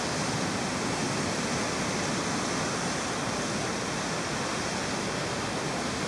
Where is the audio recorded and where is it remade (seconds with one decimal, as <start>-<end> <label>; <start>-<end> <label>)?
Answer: 0.0-6.1 recorded